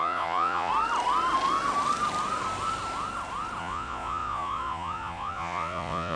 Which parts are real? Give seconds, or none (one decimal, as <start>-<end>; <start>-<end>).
0.7-3.6